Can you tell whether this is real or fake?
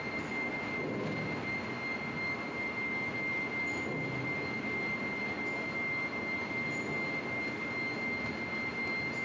real